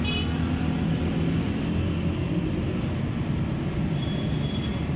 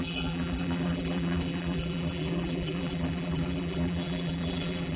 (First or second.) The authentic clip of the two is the first